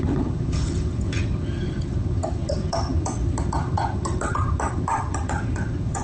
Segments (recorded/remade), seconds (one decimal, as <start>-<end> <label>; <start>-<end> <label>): 0.0-6.0 remade